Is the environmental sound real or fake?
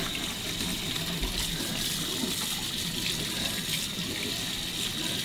real